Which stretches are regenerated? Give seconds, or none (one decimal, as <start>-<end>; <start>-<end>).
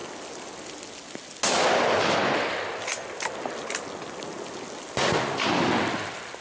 none